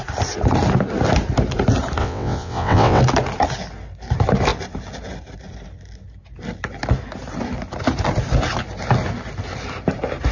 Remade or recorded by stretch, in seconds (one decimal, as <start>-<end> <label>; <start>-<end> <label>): 0.0-2.0 recorded; 2.0-3.0 remade; 3.0-10.3 recorded